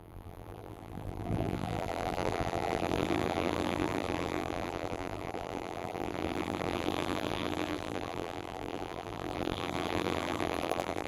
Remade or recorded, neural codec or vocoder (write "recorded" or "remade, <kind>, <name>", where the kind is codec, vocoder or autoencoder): remade, vocoder, BigVGAN v2